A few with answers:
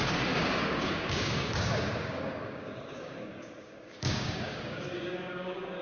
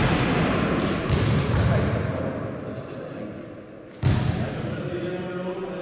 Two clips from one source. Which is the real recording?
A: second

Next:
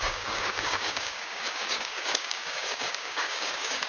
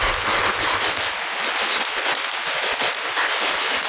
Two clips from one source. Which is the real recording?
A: second